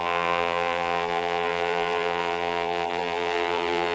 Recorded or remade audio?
remade